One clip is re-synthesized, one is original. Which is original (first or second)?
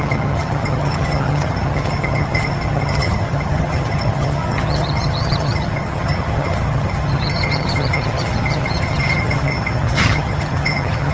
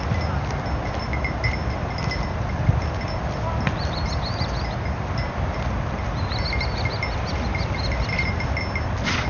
second